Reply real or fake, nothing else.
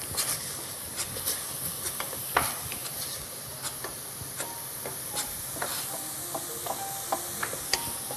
real